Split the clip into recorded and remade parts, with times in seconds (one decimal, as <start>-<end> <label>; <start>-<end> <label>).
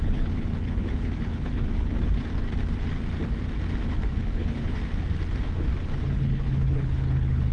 0.0-1.9 remade; 1.9-3.9 recorded; 3.9-4.8 remade; 4.8-6.0 recorded; 6.0-7.5 remade